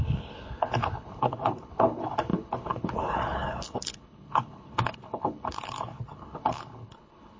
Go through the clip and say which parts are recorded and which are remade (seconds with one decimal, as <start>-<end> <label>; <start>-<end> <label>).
0.0-7.4 remade